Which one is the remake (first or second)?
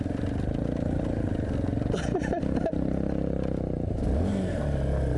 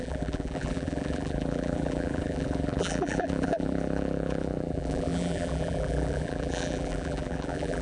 second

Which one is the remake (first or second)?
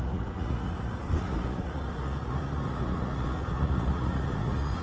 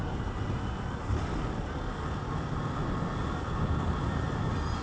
first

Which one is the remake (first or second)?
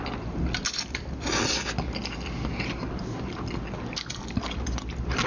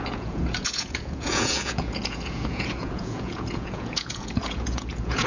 second